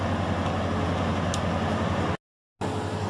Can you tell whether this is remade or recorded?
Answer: recorded